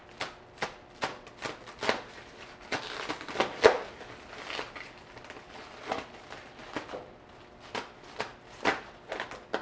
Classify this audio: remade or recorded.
recorded